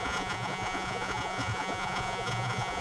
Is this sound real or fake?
fake